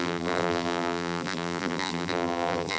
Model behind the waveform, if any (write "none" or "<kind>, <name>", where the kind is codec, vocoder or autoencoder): vocoder, BigVGAN v2